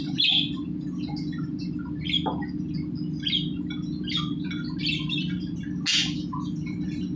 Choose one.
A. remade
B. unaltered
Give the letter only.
B